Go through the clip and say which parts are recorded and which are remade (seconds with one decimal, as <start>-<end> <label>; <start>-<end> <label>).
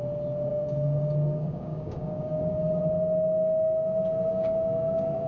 0.0-0.5 recorded; 0.5-2.8 remade; 2.8-4.3 recorded; 4.3-5.3 remade